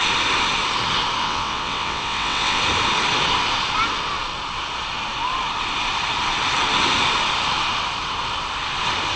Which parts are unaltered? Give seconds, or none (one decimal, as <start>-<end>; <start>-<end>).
0.0-1.2; 2.6-9.2